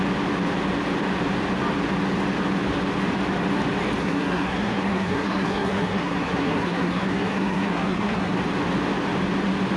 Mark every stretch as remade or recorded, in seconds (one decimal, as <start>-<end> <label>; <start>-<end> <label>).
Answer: 0.0-4.0 recorded; 4.0-8.4 remade; 8.4-9.8 recorded